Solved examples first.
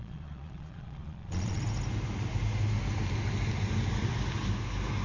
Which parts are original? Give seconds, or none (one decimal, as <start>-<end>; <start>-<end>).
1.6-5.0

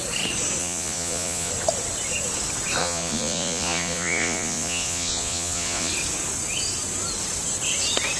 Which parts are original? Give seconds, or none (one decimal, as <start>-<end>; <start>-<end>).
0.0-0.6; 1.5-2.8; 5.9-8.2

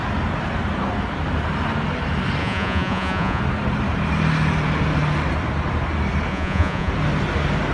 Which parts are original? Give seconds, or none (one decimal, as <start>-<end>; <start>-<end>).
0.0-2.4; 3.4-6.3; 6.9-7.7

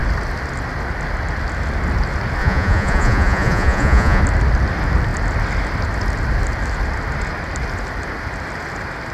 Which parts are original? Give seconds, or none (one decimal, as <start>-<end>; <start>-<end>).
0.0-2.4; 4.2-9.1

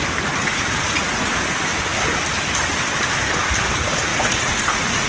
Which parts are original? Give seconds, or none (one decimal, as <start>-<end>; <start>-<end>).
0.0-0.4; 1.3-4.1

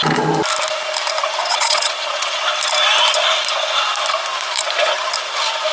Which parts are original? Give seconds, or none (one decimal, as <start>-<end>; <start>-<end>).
0.0-1.4; 2.4-5.7

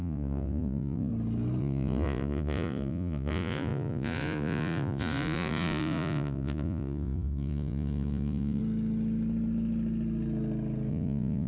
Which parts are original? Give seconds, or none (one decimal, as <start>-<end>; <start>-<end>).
1.1-1.6; 8.6-10.9

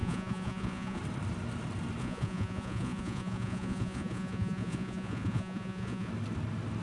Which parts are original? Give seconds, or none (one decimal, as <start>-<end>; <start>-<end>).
1.0-2.0; 6.1-6.8